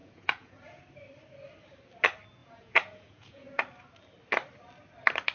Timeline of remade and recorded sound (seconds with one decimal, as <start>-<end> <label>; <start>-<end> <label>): 0.0-0.8 remade; 0.8-2.4 recorded; 2.4-3.6 remade; 3.6-5.3 recorded